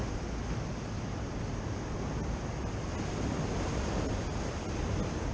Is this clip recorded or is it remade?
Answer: recorded